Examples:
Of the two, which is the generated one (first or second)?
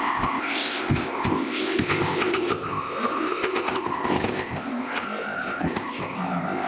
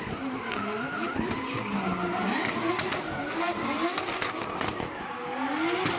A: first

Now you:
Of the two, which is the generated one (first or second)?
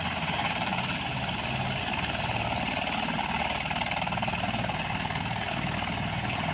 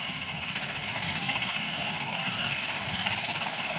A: second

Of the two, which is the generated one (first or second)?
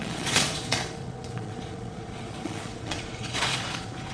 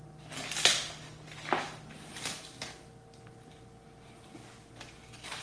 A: first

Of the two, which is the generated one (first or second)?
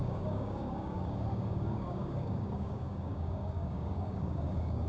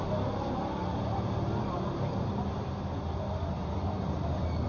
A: first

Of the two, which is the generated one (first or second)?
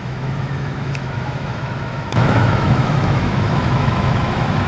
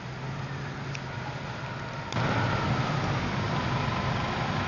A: first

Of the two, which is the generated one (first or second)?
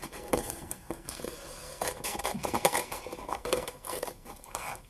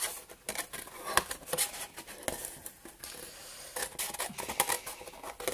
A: first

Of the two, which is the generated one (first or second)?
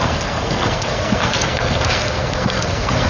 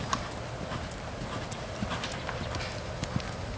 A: first